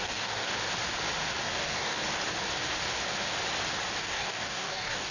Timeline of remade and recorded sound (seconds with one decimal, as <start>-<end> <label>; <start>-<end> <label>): 0.0-0.5 remade; 0.5-1.4 recorded; 1.4-2.0 remade; 2.0-4.0 recorded; 4.0-5.1 remade